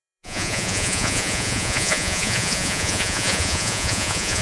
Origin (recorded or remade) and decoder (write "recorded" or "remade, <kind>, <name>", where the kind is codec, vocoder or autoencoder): remade, vocoder, Vocos